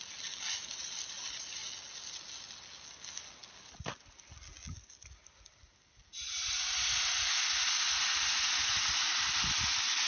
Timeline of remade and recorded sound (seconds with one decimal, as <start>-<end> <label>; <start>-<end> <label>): 0.0-10.1 recorded